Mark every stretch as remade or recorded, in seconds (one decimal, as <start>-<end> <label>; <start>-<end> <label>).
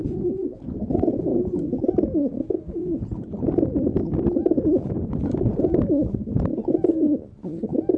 0.0-0.7 remade; 0.7-2.8 recorded; 2.8-4.8 remade; 4.8-6.9 recorded; 6.9-8.0 remade